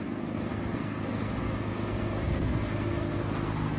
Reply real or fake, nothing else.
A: fake